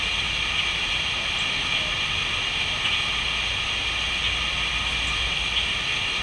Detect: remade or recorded recorded